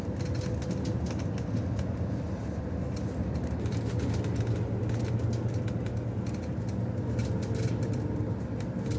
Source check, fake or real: real